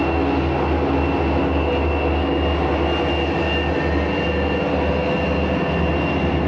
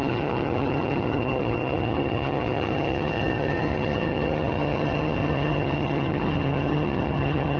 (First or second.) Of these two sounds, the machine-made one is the second